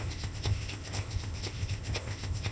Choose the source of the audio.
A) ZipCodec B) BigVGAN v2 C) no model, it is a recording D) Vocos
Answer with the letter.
A